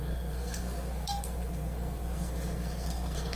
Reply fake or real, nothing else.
fake